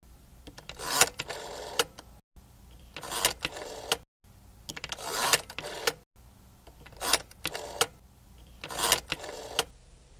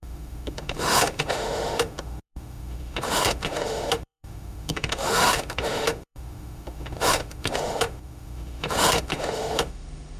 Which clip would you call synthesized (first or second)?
second